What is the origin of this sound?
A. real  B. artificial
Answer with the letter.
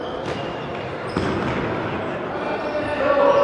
A